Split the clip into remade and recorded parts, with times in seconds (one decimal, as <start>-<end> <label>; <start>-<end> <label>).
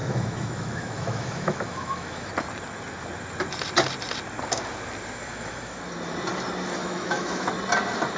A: 0.0-2.3 remade; 2.3-5.2 recorded; 5.2-5.8 remade; 5.8-6.8 recorded; 6.8-7.5 remade; 7.5-8.2 recorded